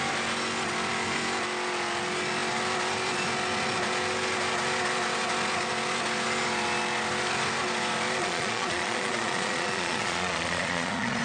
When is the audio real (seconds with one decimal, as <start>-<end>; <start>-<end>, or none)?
0.0-8.2